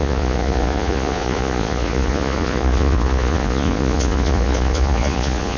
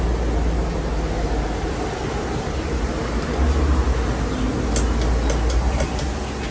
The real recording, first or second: second